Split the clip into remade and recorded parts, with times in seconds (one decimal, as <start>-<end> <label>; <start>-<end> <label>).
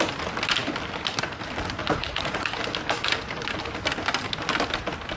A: 0.0-1.8 recorded; 1.8-2.6 remade; 2.6-5.2 recorded